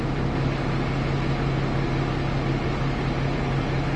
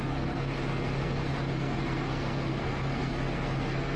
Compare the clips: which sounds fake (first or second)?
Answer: second